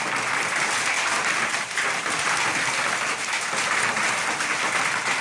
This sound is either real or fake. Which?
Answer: real